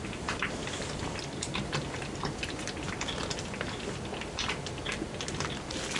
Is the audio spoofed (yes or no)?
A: no